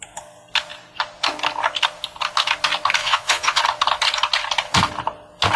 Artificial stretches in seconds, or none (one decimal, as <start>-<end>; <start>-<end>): 3.0-3.6